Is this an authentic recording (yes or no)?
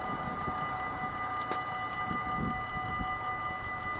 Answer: yes